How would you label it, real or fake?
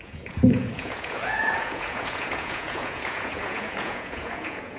fake